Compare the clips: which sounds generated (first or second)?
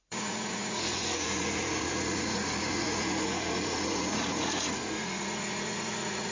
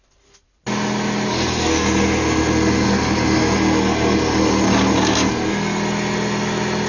first